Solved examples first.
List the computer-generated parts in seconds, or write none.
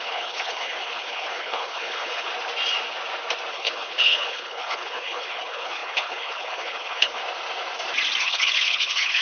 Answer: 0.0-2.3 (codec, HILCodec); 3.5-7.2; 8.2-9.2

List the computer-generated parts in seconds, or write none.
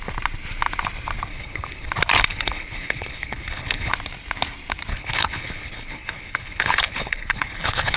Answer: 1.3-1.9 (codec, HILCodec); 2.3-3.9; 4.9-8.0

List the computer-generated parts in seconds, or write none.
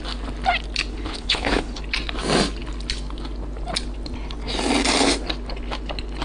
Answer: 0.9-1.8 (codec, HILCodec)